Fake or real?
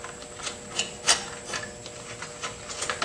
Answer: real